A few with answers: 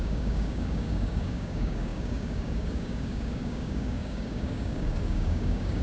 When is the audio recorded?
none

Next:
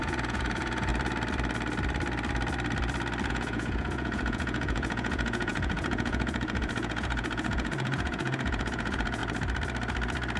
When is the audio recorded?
0.9-3.3; 9.2-10.4

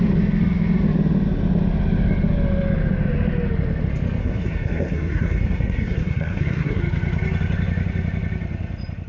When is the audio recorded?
0.0-4.2; 6.8-9.1

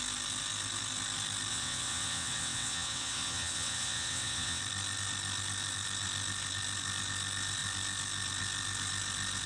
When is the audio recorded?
0.0-1.5; 4.6-9.5